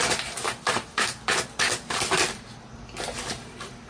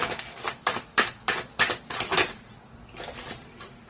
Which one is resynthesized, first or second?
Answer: second